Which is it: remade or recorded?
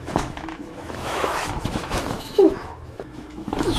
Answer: remade